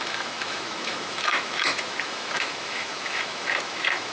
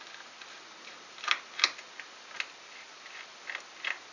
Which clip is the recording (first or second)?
second